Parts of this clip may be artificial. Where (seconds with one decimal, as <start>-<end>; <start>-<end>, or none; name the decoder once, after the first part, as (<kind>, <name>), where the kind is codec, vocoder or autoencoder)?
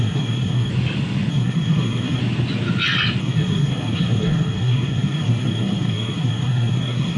0.0-0.7 (codec, SNAC); 1.3-2.2; 3.2-7.2